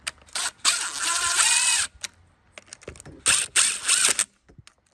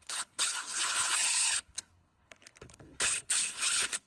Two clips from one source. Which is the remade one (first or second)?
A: second